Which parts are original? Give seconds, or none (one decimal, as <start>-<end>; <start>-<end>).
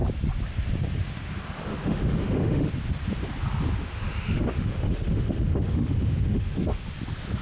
0.0-1.7; 2.7-3.8; 6.9-7.4